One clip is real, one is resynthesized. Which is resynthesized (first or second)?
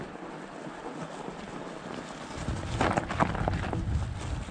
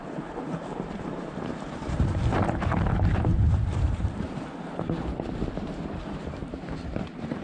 second